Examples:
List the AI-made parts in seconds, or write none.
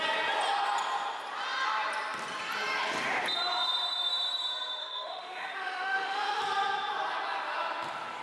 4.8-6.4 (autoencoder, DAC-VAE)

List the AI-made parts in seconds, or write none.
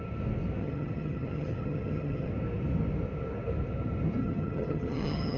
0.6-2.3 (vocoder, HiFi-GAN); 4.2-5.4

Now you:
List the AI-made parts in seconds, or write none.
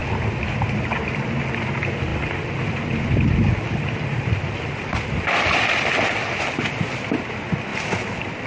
2.1-6.4 (vocoder, BigVGAN v2)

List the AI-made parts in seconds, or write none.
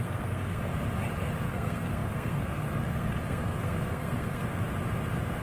0.0-0.7 (codec, SNAC); 1.4-4.4